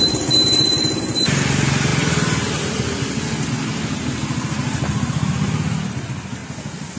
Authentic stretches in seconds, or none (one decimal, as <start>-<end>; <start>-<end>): 0.0-7.0